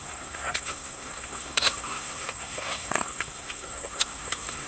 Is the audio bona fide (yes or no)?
no